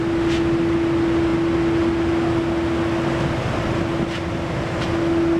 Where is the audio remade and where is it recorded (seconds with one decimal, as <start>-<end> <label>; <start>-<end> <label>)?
0.0-5.4 recorded

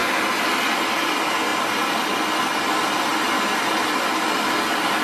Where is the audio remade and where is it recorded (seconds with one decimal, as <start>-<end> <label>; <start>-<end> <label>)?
0.0-5.0 recorded